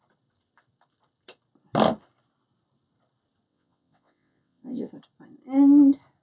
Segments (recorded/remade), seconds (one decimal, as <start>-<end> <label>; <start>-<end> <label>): 0.0-3.5 recorded; 3.5-4.9 remade; 4.9-6.2 recorded